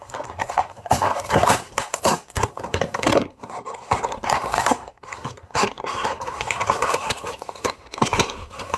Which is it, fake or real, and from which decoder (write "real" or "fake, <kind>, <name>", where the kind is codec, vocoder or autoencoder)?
fake, codec, SNAC